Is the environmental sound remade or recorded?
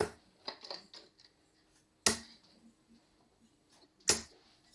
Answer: recorded